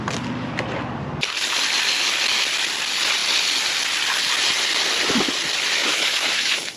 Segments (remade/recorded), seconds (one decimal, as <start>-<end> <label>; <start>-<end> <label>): 0.0-5.8 recorded; 5.8-6.8 remade